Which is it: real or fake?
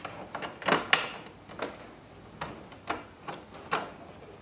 real